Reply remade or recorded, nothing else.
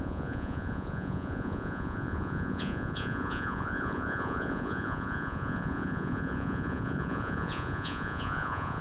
remade